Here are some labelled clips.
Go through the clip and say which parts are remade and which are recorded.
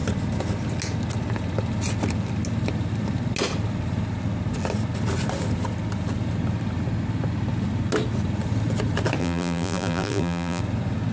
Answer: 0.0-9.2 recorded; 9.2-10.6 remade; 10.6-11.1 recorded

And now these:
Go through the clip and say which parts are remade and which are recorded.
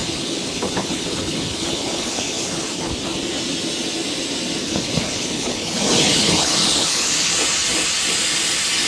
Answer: 0.0-2.9 remade; 2.9-4.6 recorded; 4.6-7.3 remade; 7.3-8.9 recorded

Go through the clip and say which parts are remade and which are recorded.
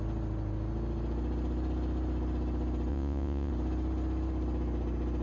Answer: 0.0-2.9 recorded; 2.9-3.5 remade; 3.5-5.2 recorded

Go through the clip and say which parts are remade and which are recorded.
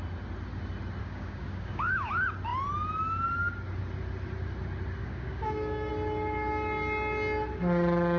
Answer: 0.0-1.0 recorded; 1.0-2.1 remade; 2.1-5.0 recorded; 5.0-5.9 remade; 5.9-8.2 recorded